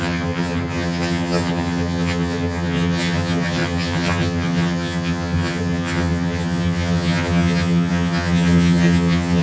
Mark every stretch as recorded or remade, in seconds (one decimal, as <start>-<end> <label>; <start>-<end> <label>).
0.0-9.4 remade